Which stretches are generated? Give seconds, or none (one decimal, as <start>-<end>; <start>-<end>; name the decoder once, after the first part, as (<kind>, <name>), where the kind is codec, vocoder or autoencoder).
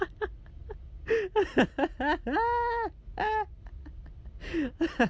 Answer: none